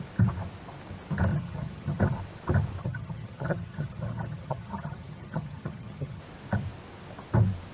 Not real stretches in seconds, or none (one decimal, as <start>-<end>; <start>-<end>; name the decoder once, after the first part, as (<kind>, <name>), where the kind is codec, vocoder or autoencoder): 1.3-2.0 (vocoder, HiFi-GAN); 2.8-6.2